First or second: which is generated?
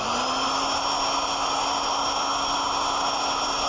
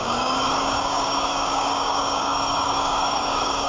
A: second